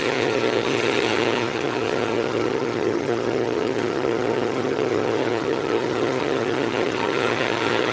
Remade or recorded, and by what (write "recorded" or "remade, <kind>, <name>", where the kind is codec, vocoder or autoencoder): remade, vocoder, HiFi-GAN